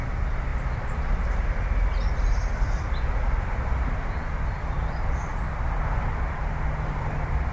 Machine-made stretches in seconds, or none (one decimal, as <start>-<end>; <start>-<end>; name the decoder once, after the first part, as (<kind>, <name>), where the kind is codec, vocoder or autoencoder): none